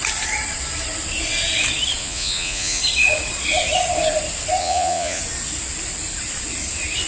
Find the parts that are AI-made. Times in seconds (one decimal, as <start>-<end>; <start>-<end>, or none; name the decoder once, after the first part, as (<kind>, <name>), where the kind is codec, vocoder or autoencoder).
2.0-2.8 (vocoder, Vocos); 4.6-5.2